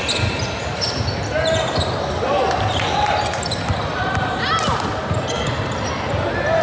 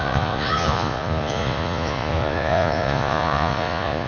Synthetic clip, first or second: second